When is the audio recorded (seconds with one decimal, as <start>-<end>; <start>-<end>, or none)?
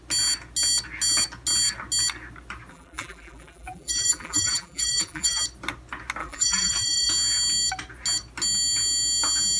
0.0-2.7; 5.4-6.2; 7.1-9.6